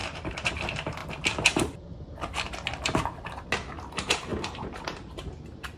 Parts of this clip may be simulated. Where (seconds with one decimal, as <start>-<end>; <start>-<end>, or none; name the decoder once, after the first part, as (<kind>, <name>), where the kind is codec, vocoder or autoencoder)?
0.0-1.0 (vocoder, BigVGAN v2); 3.9-5.8